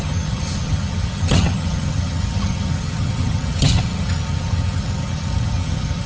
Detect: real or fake fake